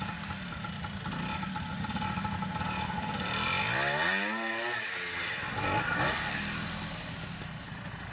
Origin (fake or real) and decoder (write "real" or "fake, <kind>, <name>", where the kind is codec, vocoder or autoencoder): real